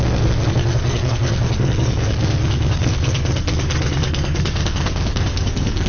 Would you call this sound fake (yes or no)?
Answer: yes